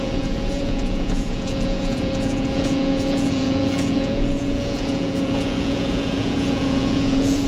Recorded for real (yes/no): no